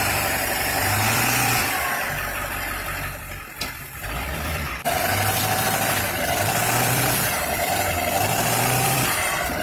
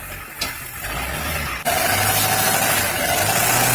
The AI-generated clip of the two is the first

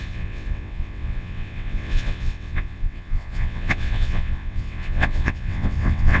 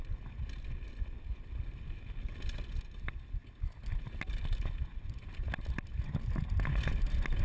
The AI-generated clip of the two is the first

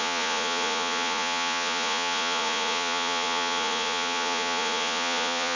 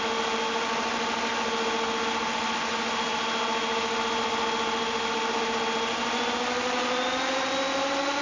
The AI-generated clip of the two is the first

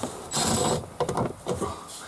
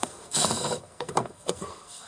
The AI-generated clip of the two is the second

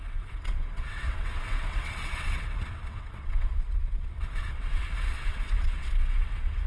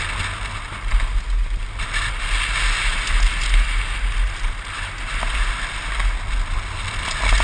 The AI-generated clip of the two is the first